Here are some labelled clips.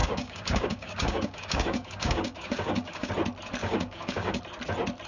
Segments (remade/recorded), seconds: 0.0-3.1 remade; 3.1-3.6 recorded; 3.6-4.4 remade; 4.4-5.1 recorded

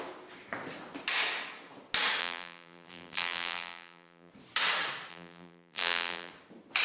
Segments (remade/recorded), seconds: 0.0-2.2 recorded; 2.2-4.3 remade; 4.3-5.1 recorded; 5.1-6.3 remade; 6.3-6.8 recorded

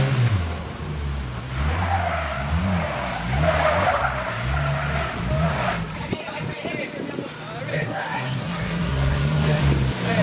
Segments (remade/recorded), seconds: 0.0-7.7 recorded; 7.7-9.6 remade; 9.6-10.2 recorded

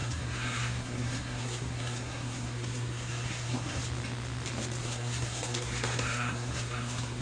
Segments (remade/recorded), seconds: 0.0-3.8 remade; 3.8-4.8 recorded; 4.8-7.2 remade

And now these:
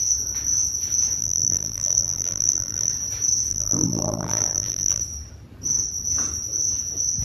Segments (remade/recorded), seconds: 0.0-1.2 recorded; 1.2-2.9 remade; 2.9-3.5 recorded; 3.5-5.0 remade; 5.0-7.2 recorded